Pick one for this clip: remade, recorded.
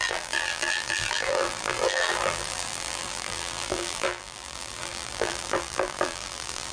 remade